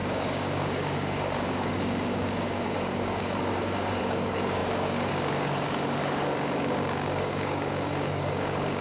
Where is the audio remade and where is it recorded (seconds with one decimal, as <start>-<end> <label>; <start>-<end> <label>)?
0.0-8.8 remade